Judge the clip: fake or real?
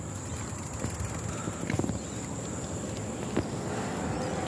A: real